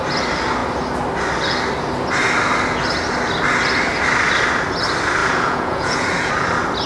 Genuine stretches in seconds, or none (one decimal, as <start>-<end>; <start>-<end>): 0.0-5.2; 6.3-6.9